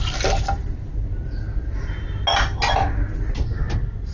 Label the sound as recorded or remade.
recorded